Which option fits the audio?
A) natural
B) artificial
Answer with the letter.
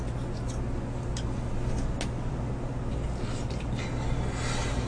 A